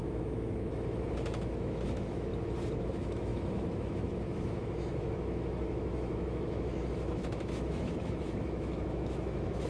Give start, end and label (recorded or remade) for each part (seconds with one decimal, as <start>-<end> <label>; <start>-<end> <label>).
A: 0.0-2.3 remade; 2.3-2.8 recorded; 2.8-9.7 remade